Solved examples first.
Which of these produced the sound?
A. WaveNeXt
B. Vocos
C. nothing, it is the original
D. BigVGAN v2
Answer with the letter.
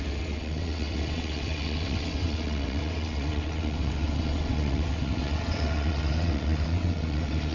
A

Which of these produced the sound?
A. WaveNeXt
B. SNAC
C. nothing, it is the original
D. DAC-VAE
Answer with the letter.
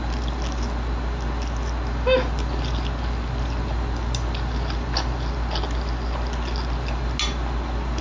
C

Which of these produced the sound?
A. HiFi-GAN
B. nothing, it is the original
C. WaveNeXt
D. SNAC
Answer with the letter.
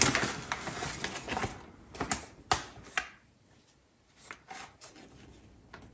B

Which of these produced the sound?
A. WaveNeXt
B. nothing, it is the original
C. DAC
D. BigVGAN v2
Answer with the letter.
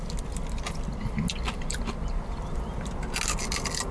B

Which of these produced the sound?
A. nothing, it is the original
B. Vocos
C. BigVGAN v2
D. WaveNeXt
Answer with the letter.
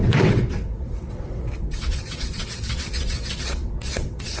D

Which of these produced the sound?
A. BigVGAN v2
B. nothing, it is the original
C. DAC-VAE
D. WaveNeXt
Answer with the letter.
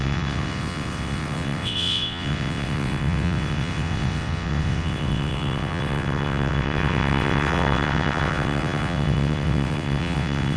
D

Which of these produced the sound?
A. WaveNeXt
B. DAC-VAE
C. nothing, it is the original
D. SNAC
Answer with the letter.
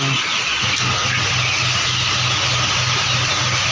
C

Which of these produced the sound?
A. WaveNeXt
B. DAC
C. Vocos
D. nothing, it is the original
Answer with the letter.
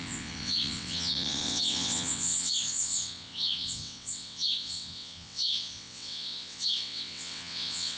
A